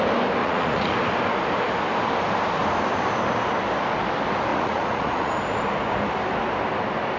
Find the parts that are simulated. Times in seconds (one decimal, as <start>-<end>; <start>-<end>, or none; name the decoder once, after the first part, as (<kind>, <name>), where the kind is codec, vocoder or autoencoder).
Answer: 0.4-0.9 (vocoder, Vocos); 4.5-5.3